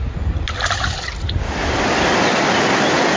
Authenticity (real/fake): real